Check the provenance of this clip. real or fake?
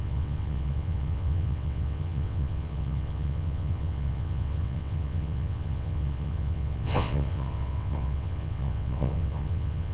fake